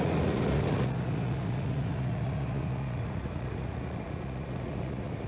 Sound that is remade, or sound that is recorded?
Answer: remade